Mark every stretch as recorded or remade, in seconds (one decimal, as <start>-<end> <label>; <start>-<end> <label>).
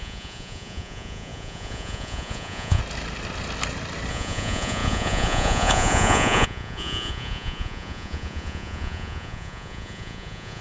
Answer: 0.0-2.8 remade; 2.8-4.1 recorded; 4.1-10.6 remade